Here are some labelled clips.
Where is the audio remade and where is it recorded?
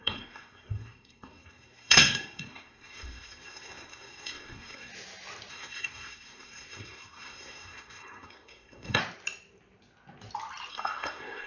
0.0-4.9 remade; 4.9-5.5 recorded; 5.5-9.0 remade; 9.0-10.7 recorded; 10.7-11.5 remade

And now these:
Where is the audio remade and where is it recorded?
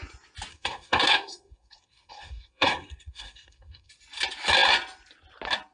0.0-0.5 recorded; 0.5-3.9 remade; 3.9-5.7 recorded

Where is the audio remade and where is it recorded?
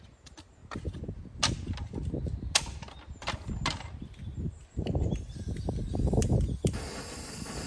0.0-0.6 remade; 0.6-4.4 recorded; 4.4-6.2 remade; 6.2-7.1 recorded; 7.1-7.7 remade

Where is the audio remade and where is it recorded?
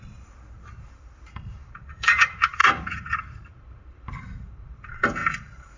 0.0-5.8 remade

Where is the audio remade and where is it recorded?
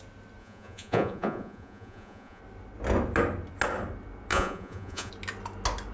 0.0-0.4 recorded; 0.4-2.4 remade; 2.4-4.3 recorded; 4.3-5.1 remade; 5.1-5.9 recorded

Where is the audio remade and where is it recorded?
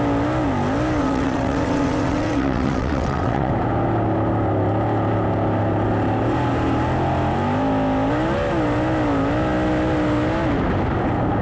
0.0-1.0 recorded; 1.0-3.5 remade; 3.5-11.4 recorded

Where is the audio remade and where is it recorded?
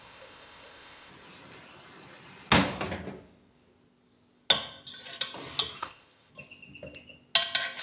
0.0-1.1 remade; 1.1-5.8 recorded; 5.8-6.3 remade; 6.3-7.8 recorded